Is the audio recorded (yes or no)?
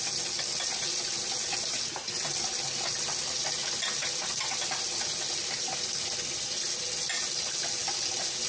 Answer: yes